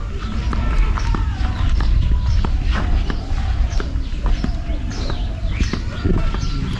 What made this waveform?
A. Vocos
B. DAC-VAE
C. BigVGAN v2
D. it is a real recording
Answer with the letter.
D